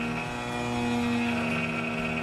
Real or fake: real